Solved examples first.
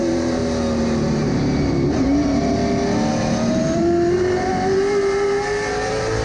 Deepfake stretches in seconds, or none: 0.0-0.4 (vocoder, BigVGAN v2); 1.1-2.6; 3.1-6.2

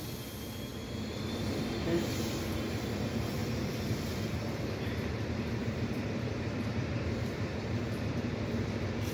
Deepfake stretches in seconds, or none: 0.7-1.6 (vocoder, BigVGAN v2); 3.4-8.3

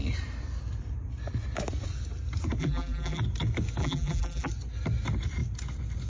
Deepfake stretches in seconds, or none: 2.6-3.2 (vocoder, BigVGAN v2); 3.8-4.5